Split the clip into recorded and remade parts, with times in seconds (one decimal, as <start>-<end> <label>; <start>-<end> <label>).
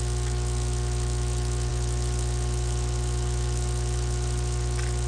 0.0-5.1 recorded